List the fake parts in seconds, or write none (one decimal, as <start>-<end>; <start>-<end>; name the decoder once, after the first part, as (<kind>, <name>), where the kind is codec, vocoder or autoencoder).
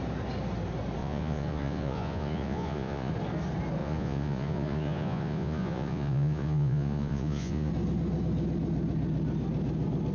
1.0-3.1 (vocoder, Vocos); 3.8-7.7